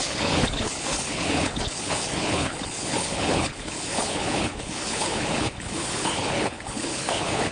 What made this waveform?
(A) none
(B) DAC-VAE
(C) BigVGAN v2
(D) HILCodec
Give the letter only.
D